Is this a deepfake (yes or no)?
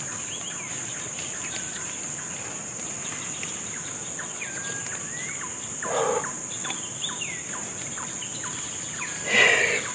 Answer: no